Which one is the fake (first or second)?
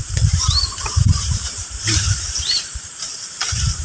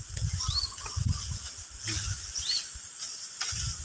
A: first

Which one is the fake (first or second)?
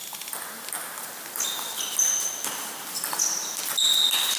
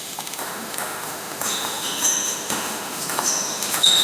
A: second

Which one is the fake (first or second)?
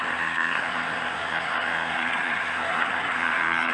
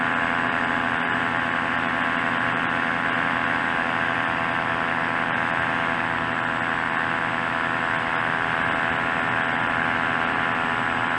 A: first